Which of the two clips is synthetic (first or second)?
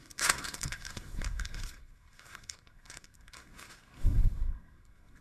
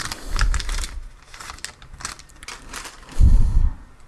first